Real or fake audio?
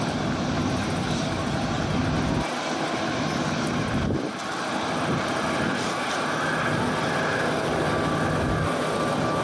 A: real